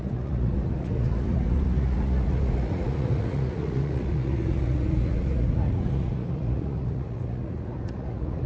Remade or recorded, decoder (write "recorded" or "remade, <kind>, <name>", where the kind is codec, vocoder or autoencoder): remade, vocoder, Vocos